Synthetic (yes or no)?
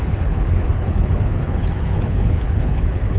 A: yes